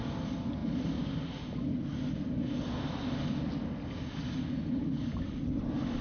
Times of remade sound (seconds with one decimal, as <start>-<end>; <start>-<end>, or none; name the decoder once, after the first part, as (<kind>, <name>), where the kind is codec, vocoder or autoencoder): none